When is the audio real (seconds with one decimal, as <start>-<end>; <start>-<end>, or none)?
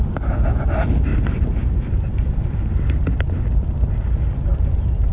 0.0-1.1; 2.8-4.5